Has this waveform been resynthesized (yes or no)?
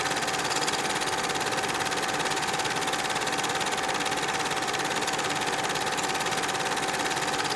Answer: no